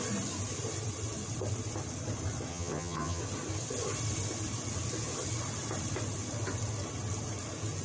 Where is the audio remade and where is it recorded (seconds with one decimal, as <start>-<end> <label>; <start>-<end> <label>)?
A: 0.0-2.5 recorded; 2.5-3.2 remade; 3.2-7.8 recorded